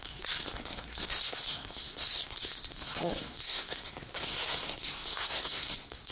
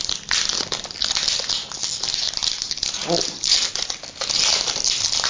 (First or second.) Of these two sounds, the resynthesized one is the first